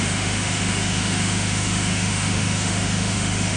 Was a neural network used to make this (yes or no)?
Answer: yes